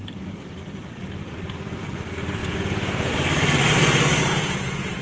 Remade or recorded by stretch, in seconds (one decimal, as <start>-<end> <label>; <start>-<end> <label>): 0.0-2.4 recorded; 2.4-3.1 remade; 3.1-4.2 recorded; 4.2-5.0 remade